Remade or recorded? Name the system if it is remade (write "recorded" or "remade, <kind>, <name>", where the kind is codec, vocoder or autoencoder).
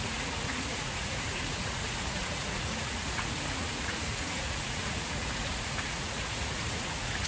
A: remade, vocoder, Vocos